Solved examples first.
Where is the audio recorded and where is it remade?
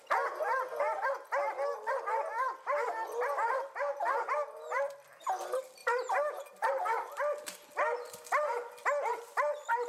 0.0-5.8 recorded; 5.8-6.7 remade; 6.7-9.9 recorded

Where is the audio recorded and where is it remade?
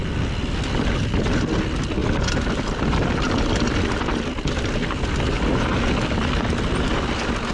0.0-7.5 recorded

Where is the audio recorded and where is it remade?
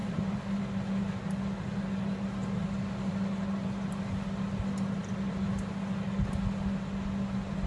0.0-0.6 remade; 0.6-7.7 recorded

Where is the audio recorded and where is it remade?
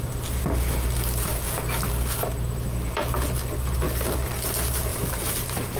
0.0-4.9 recorded; 4.9-5.8 remade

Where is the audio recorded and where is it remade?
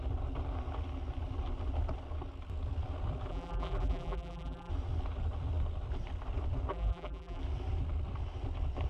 0.0-3.3 recorded; 3.3-4.7 remade; 4.7-6.7 recorded; 6.7-7.4 remade; 7.4-8.9 recorded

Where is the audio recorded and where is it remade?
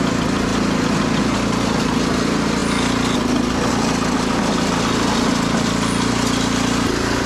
0.0-7.3 recorded